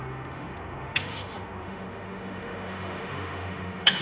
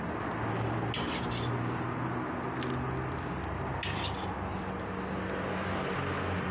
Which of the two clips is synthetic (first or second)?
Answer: first